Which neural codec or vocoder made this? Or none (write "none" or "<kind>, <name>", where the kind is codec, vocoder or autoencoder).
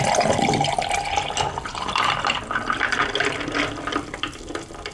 none